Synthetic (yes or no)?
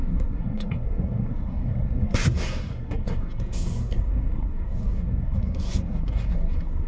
yes